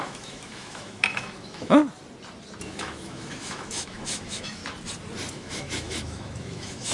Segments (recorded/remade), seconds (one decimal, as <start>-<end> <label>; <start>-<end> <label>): 0.0-1.8 remade; 1.8-2.6 recorded; 2.6-4.6 remade; 4.6-5.3 recorded; 5.3-6.9 remade